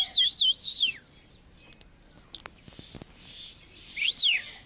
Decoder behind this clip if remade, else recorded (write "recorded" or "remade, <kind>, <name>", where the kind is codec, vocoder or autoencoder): recorded